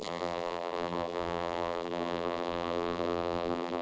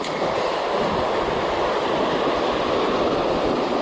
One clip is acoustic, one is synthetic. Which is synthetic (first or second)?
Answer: first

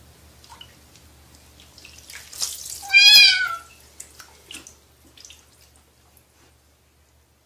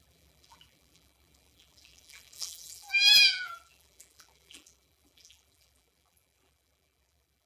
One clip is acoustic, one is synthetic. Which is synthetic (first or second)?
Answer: second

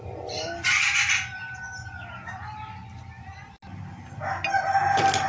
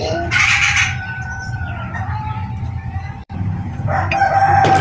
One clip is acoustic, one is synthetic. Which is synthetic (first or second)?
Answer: second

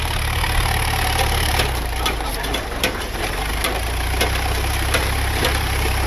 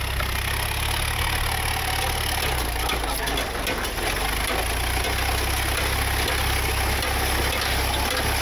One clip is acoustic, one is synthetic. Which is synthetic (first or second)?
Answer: first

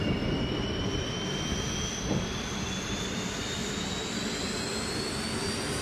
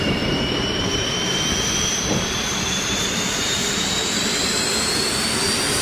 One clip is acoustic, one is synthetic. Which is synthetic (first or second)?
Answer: second